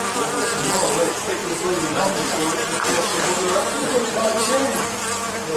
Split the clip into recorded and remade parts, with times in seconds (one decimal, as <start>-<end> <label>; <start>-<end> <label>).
0.0-1.4 recorded; 1.4-2.4 remade; 2.4-3.1 recorded; 3.1-4.6 remade; 4.6-5.6 recorded

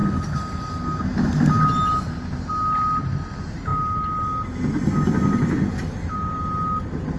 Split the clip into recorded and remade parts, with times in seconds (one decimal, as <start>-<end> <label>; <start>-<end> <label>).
0.0-7.2 recorded

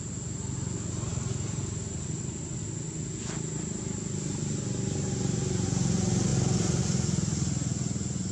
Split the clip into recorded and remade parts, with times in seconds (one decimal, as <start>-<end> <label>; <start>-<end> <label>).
0.0-1.1 recorded; 1.1-1.7 remade; 1.7-8.3 recorded

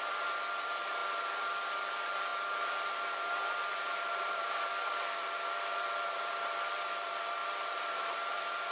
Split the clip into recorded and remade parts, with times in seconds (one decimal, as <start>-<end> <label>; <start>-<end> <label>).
0.0-8.7 remade

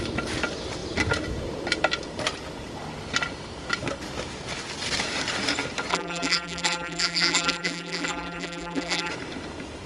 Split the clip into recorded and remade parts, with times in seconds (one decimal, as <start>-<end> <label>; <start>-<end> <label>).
0.0-5.9 recorded; 5.9-9.1 remade; 9.1-9.9 recorded